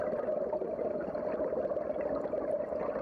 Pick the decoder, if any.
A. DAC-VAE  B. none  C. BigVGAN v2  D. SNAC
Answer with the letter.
C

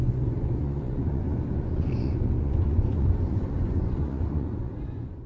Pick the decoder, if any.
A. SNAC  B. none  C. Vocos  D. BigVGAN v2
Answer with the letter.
C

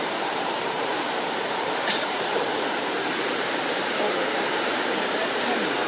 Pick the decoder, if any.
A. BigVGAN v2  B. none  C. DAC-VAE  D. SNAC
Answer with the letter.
A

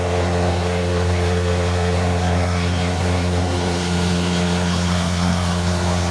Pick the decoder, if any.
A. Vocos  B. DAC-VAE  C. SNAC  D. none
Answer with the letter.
C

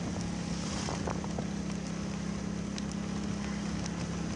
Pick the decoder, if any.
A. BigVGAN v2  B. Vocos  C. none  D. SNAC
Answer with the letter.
C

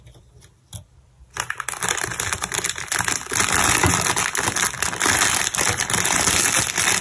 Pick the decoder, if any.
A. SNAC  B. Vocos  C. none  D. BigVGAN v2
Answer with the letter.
C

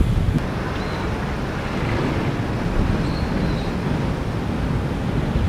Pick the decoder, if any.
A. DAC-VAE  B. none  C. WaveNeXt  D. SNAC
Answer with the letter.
B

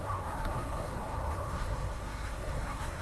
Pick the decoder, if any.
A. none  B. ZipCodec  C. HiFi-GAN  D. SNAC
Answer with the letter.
D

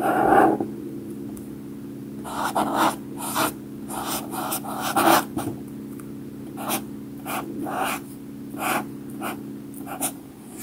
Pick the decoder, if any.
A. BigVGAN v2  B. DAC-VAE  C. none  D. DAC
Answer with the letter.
C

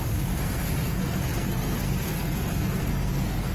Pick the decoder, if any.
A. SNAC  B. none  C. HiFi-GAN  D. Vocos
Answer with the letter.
A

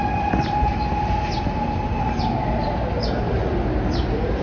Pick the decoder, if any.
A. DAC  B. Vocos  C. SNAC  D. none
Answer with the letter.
D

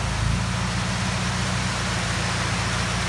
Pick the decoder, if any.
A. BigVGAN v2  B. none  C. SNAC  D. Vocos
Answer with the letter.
B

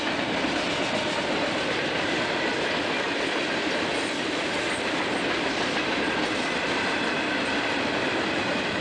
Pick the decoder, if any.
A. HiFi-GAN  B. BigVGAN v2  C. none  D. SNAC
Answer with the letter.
B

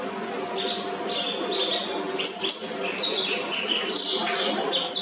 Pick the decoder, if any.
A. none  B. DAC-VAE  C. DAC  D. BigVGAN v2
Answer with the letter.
A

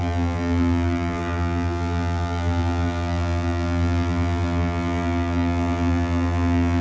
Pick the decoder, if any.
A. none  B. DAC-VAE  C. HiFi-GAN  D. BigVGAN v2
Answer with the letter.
D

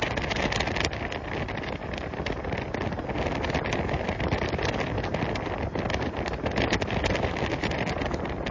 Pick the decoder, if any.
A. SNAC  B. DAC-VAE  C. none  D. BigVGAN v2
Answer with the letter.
C